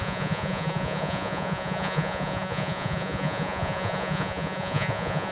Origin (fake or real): fake